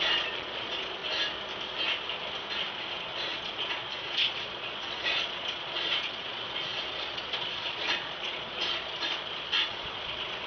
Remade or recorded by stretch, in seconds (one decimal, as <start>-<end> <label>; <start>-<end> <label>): 0.0-1.0 remade; 1.0-2.9 recorded; 2.9-10.5 remade